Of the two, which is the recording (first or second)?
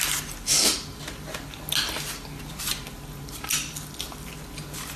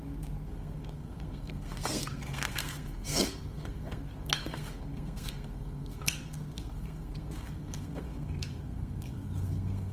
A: first